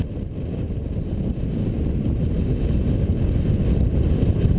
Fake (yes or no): no